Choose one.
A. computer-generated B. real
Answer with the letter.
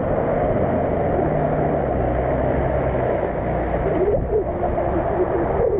B